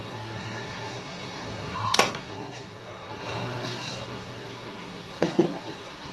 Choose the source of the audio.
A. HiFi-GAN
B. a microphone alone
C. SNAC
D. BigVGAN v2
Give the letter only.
C